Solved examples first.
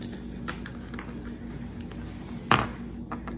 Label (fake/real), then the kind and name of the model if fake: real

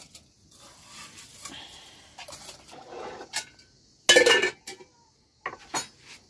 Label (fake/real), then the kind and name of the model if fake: real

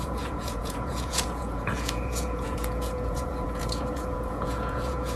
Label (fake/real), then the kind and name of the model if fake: fake, vocoder, Vocos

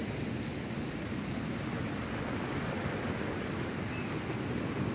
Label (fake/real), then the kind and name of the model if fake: real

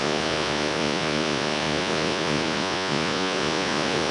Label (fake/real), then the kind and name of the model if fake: fake, vocoder, Vocos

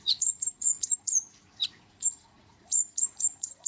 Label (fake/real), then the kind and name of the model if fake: fake, vocoder, Vocos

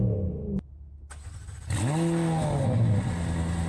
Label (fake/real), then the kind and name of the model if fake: real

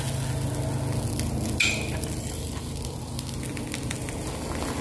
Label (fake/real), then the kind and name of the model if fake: real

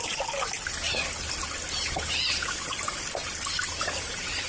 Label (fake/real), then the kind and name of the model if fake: real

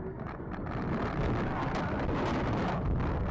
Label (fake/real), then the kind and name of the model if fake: real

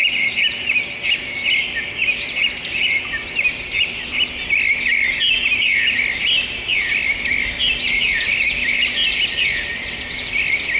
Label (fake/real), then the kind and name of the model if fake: real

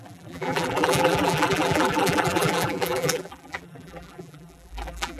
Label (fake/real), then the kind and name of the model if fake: fake, vocoder, BigVGAN v2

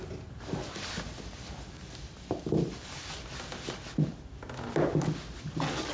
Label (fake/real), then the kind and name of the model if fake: real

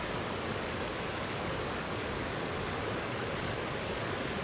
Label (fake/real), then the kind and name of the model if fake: fake, codec, DAC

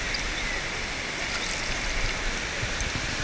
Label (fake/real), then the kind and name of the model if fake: real